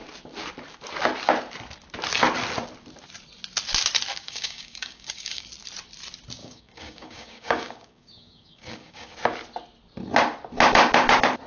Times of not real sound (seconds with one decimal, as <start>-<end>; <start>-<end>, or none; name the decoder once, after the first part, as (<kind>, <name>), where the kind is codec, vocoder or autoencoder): 4.1-5.5 (codec, DAC); 6.4-9.1